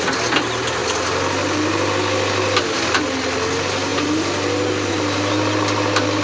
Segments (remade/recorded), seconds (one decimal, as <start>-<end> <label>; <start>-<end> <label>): 0.0-6.2 recorded